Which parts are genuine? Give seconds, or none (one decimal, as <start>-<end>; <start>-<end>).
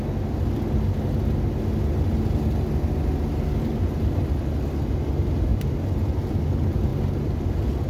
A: 0.0-7.9